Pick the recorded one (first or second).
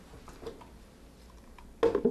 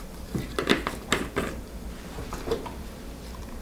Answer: first